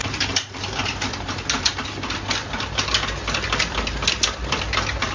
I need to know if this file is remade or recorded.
recorded